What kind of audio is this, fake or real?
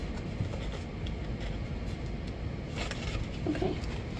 real